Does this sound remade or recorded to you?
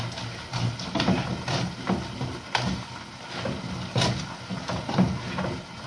recorded